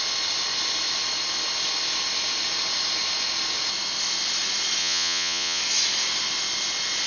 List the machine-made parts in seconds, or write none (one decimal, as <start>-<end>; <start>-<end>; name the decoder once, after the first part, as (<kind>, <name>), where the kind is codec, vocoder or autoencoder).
4.8-5.6 (vocoder, Vocos)